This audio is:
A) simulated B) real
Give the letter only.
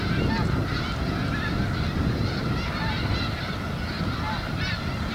B